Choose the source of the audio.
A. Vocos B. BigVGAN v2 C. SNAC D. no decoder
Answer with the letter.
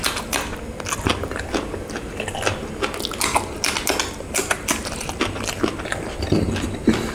D